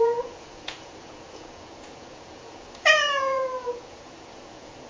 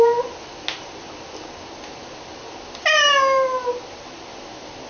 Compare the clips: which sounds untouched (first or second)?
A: second